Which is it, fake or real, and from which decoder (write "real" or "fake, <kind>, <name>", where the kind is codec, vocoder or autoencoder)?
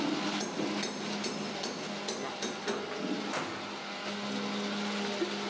real